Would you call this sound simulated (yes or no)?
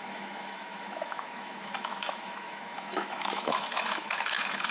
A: yes